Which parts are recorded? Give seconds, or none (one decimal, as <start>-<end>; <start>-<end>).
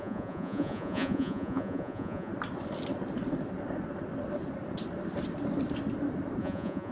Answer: 2.3-6.4